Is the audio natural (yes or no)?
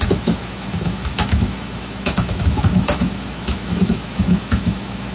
no